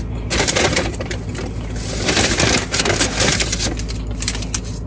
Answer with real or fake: real